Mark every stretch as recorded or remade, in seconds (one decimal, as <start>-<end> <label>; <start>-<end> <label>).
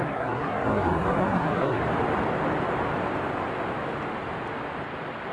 0.0-1.8 remade; 1.8-5.3 recorded